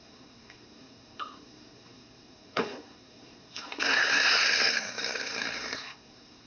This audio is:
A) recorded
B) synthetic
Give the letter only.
B